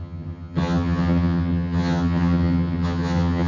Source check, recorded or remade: remade